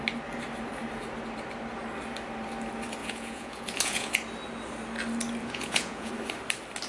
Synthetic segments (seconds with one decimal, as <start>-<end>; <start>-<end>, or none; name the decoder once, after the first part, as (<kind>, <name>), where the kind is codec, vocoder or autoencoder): 3.0-4.1 (vocoder, Vocos); 5.4-6.1